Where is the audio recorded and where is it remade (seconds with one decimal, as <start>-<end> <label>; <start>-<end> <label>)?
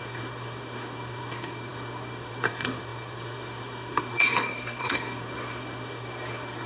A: 0.0-6.7 remade